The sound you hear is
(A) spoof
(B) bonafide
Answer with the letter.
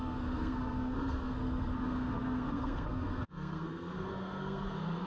A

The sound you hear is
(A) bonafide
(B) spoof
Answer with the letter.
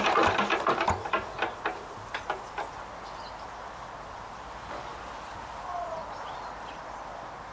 A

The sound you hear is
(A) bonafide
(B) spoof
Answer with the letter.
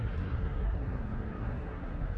B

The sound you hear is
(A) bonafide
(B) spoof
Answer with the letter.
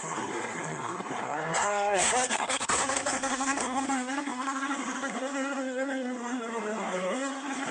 B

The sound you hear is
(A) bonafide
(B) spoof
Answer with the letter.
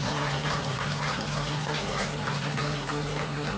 B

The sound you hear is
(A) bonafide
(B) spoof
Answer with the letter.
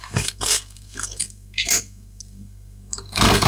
B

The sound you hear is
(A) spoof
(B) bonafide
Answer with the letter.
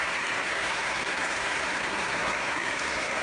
A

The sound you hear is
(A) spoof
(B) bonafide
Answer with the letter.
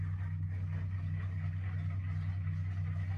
B